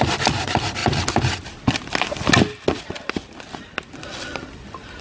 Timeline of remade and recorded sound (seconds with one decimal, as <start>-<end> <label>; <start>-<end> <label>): 0.0-5.0 recorded